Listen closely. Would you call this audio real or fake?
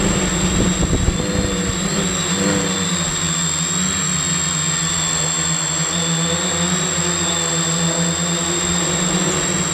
real